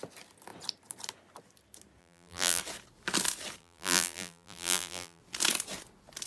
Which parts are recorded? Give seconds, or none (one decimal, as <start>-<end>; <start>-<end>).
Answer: 0.0-2.0; 2.6-3.6; 5.2-6.3